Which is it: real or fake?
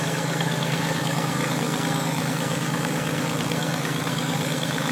fake